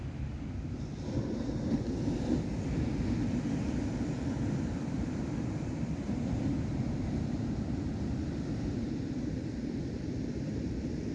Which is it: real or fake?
real